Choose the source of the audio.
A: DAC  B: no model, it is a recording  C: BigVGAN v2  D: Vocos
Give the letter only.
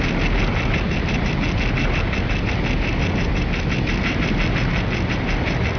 B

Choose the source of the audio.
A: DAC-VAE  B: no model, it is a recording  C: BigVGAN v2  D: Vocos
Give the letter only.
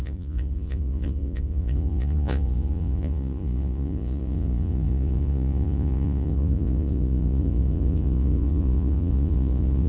D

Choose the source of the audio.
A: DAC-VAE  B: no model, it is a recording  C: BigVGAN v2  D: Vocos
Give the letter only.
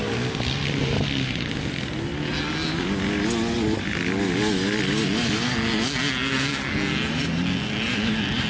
B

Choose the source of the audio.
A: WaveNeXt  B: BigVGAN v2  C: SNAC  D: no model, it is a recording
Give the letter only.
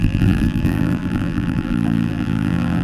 B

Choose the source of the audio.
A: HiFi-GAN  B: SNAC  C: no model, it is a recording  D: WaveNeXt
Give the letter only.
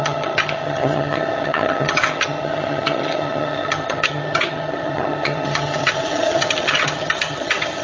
A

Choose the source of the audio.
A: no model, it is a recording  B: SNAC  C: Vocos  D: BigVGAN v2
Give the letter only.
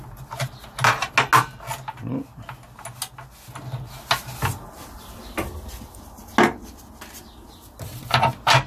A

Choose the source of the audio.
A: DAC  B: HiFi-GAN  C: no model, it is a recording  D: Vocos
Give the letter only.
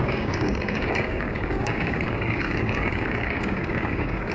A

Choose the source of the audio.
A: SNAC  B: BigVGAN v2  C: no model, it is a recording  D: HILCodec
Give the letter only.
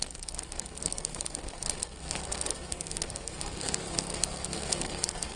A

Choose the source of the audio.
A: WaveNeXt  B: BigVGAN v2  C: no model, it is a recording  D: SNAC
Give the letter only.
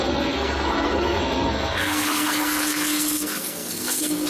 D